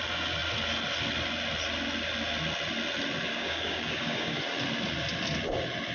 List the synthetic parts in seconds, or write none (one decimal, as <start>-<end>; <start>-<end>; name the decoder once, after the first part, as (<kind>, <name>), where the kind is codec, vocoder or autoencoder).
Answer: 3.3-4.4 (codec, DAC)

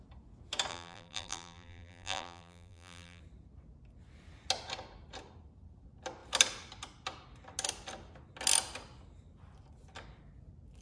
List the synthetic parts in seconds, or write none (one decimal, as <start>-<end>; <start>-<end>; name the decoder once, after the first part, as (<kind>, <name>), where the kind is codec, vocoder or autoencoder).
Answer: 0.7-3.2 (vocoder, BigVGAN v2)

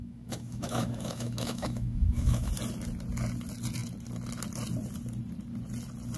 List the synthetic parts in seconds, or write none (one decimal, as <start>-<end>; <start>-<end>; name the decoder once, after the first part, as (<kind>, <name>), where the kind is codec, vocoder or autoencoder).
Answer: 0.0-2.5 (autoencoder, DAC-VAE)

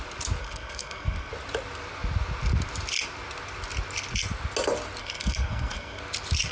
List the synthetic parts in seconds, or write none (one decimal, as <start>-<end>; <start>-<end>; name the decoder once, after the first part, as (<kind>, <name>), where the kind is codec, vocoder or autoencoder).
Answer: 0.4-1.3 (codec, SNAC); 5.0-6.0

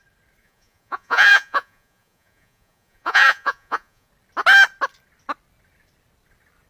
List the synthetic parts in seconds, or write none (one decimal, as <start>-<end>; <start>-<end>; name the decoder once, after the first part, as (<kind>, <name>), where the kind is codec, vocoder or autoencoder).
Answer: 0.4-4.1 (vocoder, Vocos)

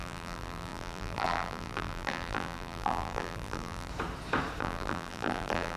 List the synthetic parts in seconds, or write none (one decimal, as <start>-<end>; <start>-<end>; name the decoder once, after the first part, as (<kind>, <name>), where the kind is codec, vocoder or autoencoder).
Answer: 0.0-3.9 (vocoder, BigVGAN v2); 4.6-5.8

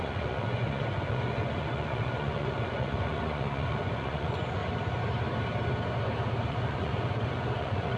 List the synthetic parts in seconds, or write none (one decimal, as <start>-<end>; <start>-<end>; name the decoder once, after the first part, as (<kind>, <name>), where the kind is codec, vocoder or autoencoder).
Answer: 0.0-4.6 (vocoder, Vocos); 6.5-8.0

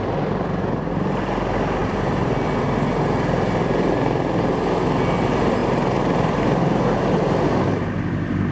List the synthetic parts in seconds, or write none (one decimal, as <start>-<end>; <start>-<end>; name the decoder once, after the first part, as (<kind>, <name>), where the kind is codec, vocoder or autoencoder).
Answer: 1.8-2.4 (vocoder, BigVGAN v2); 5.6-7.9